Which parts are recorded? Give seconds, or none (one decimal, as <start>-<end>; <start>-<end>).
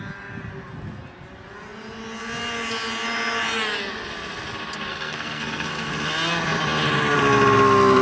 0.0-4.9; 5.9-8.0